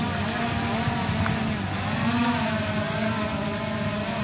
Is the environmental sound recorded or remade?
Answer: recorded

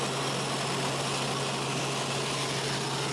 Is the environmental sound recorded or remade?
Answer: recorded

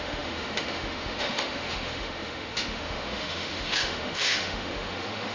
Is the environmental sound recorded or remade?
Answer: remade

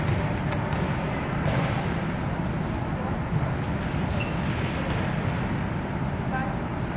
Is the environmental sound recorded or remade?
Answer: recorded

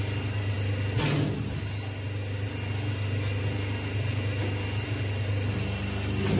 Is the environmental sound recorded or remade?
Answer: recorded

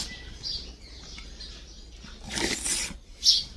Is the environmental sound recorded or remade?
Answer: recorded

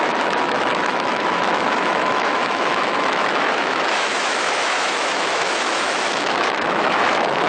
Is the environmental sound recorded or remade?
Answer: remade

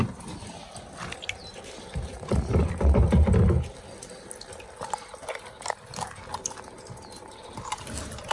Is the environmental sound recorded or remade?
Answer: recorded